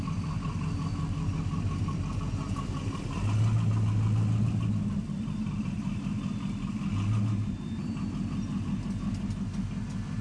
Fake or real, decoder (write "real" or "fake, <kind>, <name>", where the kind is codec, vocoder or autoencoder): real